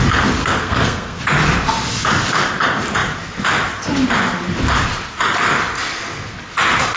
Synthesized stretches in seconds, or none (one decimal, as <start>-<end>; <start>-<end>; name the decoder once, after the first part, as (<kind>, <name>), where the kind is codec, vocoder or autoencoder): 0.4-1.2 (codec, SNAC)